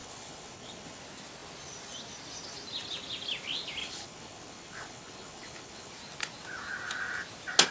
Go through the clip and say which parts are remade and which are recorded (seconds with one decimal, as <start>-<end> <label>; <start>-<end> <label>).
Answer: 0.0-1.0 remade; 1.0-3.8 recorded; 3.8-5.9 remade; 5.9-7.7 recorded